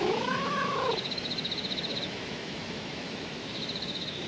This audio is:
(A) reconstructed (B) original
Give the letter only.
A